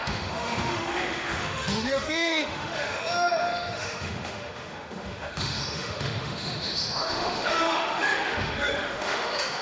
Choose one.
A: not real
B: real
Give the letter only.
A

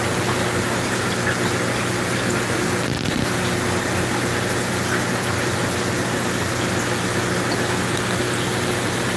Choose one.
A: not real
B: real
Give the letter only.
B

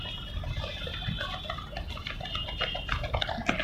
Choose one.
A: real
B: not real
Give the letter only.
A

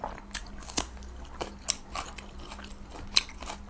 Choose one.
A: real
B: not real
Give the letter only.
A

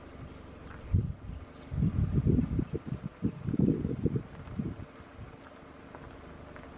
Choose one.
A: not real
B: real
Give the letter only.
B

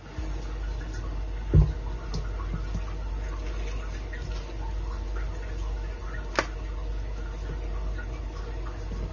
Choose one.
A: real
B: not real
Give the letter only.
A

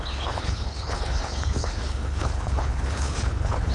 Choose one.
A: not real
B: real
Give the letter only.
A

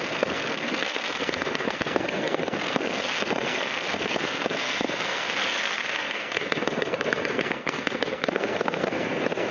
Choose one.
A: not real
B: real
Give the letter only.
A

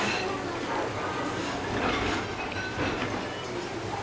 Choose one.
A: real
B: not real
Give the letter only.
A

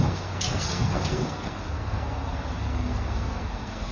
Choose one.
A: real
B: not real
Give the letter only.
B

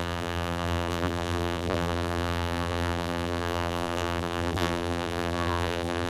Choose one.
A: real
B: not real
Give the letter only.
B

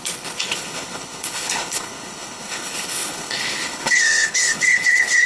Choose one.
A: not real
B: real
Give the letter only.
A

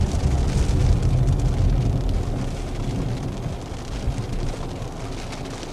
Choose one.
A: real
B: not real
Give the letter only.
A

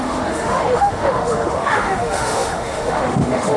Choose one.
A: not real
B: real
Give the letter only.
A